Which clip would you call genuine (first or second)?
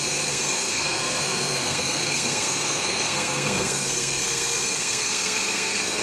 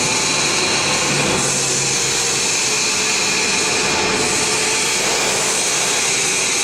second